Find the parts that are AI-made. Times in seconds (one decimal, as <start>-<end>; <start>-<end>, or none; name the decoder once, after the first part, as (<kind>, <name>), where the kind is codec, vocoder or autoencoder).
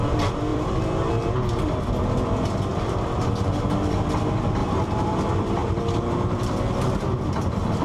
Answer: 0.5-1.1 (vocoder, BigVGAN v2); 2.7-3.6; 4.6-7.8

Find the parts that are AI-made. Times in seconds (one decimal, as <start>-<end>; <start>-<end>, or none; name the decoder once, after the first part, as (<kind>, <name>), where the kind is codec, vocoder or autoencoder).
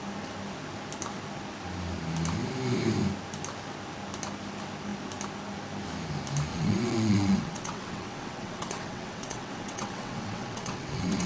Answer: 6.5-11.3 (vocoder, WaveNeXt)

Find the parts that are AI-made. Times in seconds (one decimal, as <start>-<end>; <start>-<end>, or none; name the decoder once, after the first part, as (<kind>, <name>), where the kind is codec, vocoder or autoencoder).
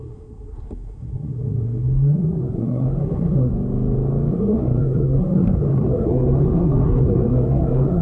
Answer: 0.0-3.5 (codec, SNAC); 4.3-8.0